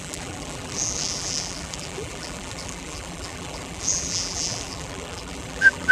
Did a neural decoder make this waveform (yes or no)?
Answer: yes